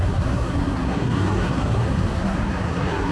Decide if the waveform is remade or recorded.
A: remade